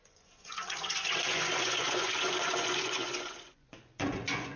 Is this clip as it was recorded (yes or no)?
no